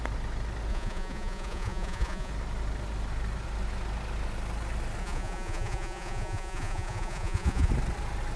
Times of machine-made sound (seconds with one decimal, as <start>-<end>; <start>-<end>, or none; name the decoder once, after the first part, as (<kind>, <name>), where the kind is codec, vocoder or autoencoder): 0.7-2.3 (vocoder, Vocos); 5.0-7.7